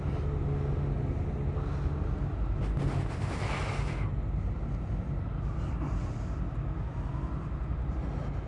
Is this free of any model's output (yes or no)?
yes